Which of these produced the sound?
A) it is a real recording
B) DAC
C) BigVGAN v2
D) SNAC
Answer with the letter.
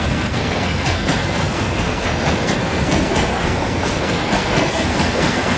D